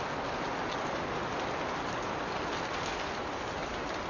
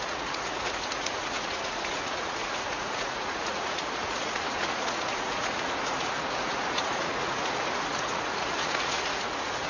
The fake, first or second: second